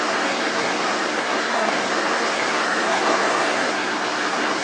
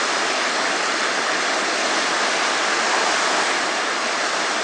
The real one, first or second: second